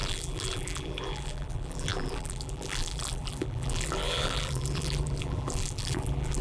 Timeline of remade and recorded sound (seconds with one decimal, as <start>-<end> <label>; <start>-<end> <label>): 0.0-6.4 remade